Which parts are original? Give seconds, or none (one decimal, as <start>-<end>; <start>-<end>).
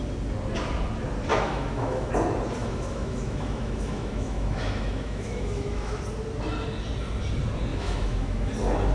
0.0-1.3; 2.1-2.6; 6.0-7.7; 8.5-8.9